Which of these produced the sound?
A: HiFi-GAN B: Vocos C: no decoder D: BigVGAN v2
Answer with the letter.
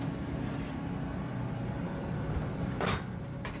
D